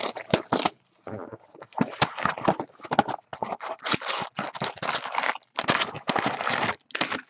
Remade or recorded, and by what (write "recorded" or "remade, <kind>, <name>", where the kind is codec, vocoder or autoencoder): recorded